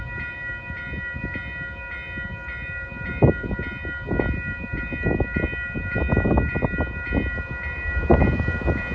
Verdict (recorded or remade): recorded